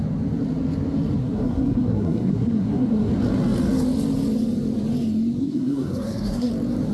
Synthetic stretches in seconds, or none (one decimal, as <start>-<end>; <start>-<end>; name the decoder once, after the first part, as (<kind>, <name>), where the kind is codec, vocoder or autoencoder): 1.2-3.1 (codec, SNAC); 5.4-6.5